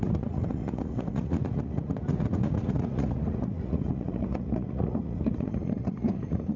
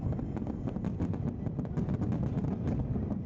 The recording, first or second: second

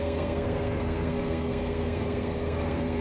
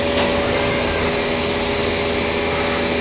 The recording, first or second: second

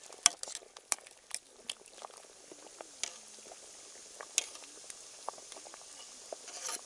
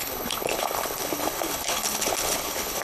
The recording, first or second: first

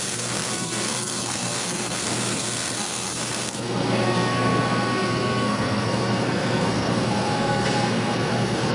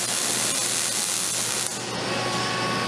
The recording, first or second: second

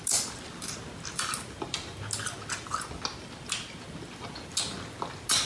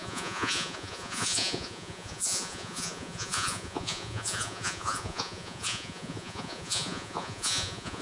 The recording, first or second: first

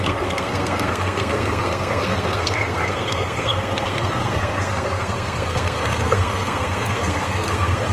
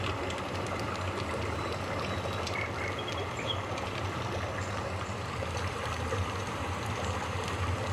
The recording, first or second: second